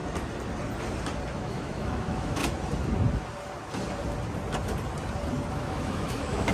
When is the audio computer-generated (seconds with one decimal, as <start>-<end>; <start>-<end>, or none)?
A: 1.3-2.4; 5.5-6.5